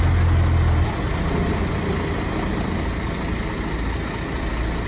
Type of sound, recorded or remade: recorded